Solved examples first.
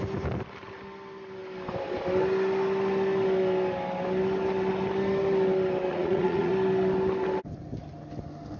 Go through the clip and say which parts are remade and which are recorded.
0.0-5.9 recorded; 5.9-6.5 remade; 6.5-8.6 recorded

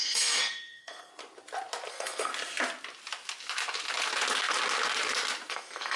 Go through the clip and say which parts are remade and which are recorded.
0.0-1.1 remade; 1.1-1.9 recorded; 1.9-2.3 remade; 2.3-5.5 recorded; 5.5-6.0 remade

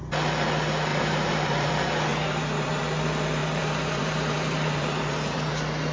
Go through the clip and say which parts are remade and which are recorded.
0.0-0.9 recorded; 0.9-1.7 remade; 1.7-2.1 recorded; 2.1-2.8 remade; 2.8-3.4 recorded; 3.4-5.5 remade; 5.5-5.9 recorded